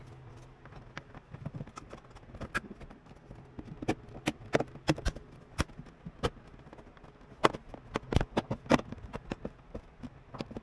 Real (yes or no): yes